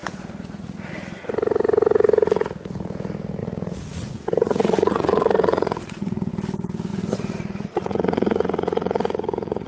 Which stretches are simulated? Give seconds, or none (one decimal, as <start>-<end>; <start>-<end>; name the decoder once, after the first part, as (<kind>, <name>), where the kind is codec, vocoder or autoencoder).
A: 0.0-0.9 (vocoder, Vocos); 3.4-6.3; 6.9-9.7